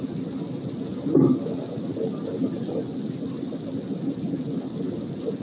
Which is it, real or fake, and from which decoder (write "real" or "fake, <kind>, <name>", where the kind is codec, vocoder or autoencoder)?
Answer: real